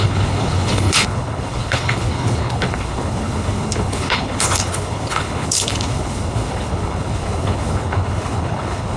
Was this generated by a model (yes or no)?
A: yes